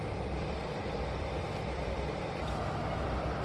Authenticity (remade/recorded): remade